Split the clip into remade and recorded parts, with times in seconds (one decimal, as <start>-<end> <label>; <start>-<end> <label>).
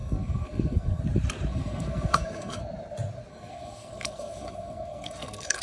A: 0.0-1.0 remade; 1.0-1.5 recorded; 1.5-2.6 remade; 2.6-3.3 recorded; 3.3-5.6 remade